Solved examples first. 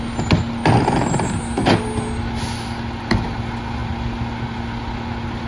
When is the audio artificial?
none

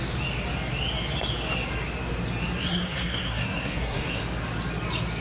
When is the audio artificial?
2.6-4.2

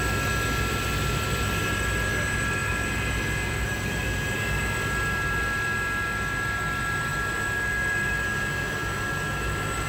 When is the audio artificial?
none

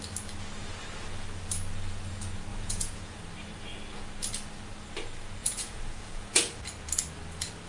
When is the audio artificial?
2.5-3.2; 5.4-6.6